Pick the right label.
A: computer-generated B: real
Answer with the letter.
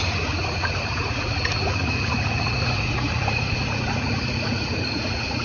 A